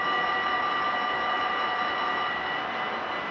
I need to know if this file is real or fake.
real